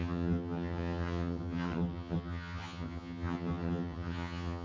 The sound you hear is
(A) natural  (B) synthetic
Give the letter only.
B